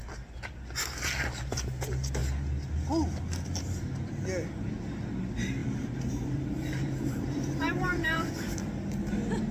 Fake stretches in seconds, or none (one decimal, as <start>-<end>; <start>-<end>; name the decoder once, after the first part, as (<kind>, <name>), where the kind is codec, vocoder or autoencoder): 5.6-8.3 (vocoder, BigVGAN v2)